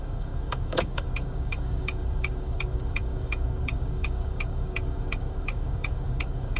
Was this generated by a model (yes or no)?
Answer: yes